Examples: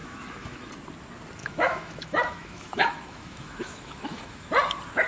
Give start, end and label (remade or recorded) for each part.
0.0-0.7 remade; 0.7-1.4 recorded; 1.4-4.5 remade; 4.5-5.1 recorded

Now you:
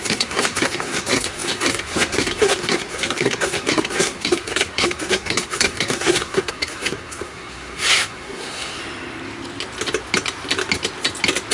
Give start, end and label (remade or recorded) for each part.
0.0-8.8 remade; 8.8-11.5 recorded

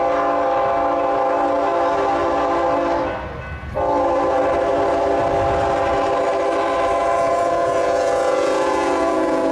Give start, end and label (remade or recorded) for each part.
0.0-7.0 recorded; 7.0-9.5 remade

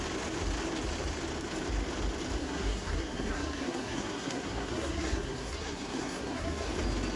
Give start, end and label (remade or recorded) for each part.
0.0-2.4 recorded; 2.4-6.7 remade; 6.7-7.2 recorded

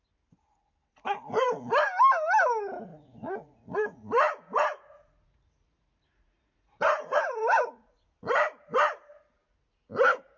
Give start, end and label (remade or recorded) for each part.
0.0-2.9 recorded; 2.9-7.2 remade; 7.2-10.4 recorded

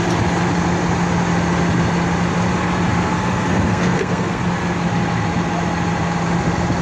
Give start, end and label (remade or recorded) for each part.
0.0-2.9 recorded; 2.9-4.4 remade; 4.4-6.8 recorded

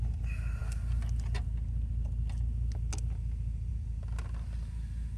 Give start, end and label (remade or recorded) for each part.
0.0-5.2 recorded